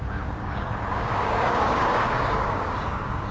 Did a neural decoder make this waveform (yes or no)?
yes